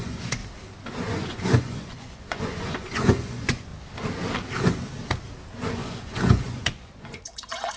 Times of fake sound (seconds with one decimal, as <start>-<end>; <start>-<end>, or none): 0.0-0.4; 1.1-3.7; 5.7-7.8